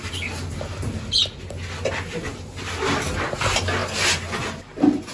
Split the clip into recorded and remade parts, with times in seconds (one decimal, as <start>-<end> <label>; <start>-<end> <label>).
0.0-2.3 recorded; 2.3-3.1 remade; 3.1-5.1 recorded